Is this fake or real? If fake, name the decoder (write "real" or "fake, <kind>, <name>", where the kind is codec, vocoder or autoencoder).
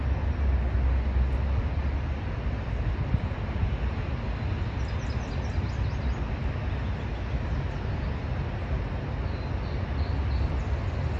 real